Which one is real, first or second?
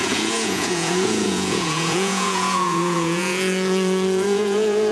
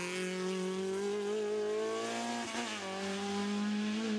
second